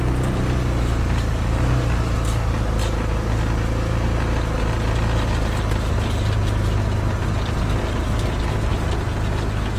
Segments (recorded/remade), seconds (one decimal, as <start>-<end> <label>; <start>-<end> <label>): 0.0-9.8 recorded

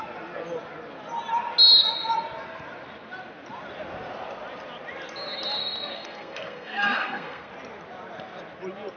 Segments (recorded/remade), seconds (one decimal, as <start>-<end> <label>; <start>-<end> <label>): 0.0-5.6 recorded; 5.6-7.5 remade; 7.5-9.0 recorded

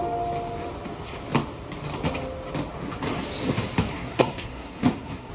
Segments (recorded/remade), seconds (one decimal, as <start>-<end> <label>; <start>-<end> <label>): 0.0-3.9 recorded; 3.9-5.3 remade

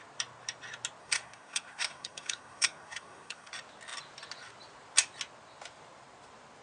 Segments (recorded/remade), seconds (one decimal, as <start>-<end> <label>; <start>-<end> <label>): 0.0-1.0 recorded; 1.0-3.5 remade; 3.5-6.6 recorded